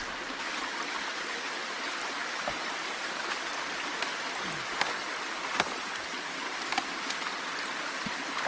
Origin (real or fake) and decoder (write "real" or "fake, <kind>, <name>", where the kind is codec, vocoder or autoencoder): real